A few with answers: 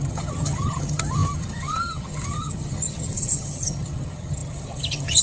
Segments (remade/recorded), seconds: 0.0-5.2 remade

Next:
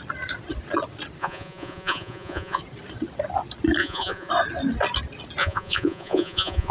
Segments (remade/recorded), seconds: 0.0-1.2 recorded; 1.2-2.6 remade; 2.6-3.8 recorded; 3.8-4.3 remade; 4.3-5.4 recorded; 5.4-6.7 remade

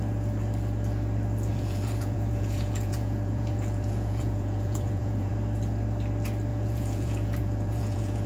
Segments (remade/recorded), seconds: 0.0-1.5 recorded; 1.5-5.3 remade; 5.3-6.5 recorded; 6.5-8.3 remade